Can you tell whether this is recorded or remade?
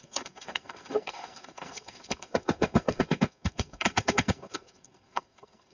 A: remade